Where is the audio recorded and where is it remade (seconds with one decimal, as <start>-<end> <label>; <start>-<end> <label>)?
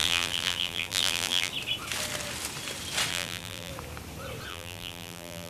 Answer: 0.0-1.5 remade; 1.5-3.1 recorded; 3.1-3.7 remade; 3.7-4.5 recorded; 4.5-5.5 remade